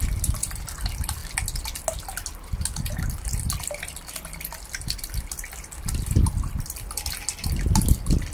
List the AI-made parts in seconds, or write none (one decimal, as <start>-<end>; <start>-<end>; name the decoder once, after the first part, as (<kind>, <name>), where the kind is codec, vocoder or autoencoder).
none